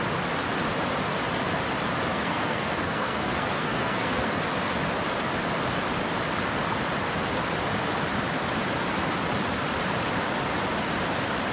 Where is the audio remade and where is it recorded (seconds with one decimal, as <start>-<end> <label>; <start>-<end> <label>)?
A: 0.0-2.1 recorded; 2.1-4.4 remade; 4.4-11.5 recorded